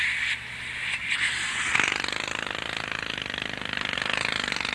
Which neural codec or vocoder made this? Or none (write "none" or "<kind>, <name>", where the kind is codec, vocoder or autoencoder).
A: none